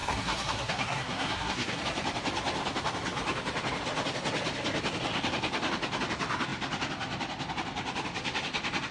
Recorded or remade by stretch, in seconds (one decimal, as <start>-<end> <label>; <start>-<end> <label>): 0.0-1.8 remade; 1.8-8.9 recorded